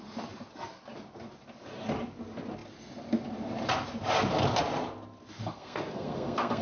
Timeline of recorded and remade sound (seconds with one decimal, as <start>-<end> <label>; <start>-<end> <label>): 0.0-5.4 recorded; 5.4-6.6 remade